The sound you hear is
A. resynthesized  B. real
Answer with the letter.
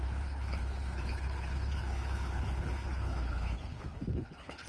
A